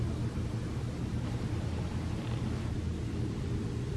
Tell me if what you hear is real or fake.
real